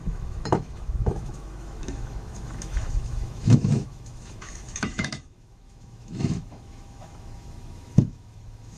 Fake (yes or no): yes